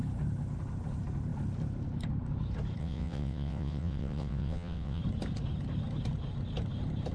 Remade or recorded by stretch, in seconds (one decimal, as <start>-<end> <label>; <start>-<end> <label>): 0.0-2.8 recorded; 2.8-5.0 remade; 5.0-7.1 recorded